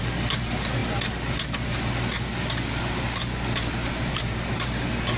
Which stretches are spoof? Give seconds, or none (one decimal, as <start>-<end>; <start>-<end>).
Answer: none